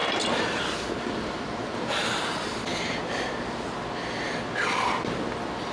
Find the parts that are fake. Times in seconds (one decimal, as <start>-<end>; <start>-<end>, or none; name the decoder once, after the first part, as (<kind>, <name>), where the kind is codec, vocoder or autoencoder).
0.0-2.3 (vocoder, BigVGAN v2)